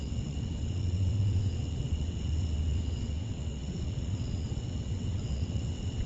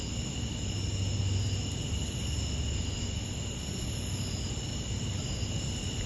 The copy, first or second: first